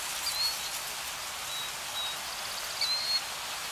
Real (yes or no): yes